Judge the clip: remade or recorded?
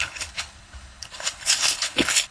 remade